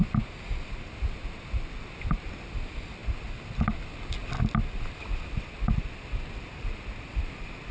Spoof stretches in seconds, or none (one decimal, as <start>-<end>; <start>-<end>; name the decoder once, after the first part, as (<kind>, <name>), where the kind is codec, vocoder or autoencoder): none